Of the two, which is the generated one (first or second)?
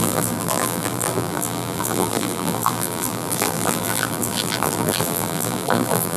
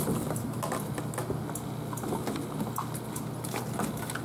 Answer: first